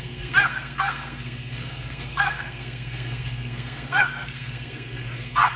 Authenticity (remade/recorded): remade